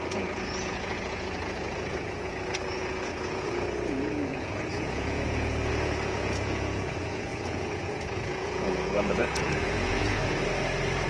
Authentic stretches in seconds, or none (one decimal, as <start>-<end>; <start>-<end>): 10.2-11.1